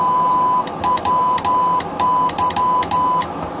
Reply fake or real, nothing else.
real